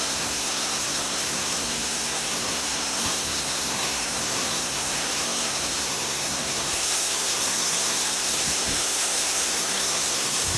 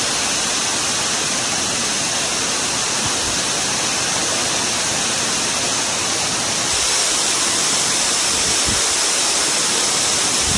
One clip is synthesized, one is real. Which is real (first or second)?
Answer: second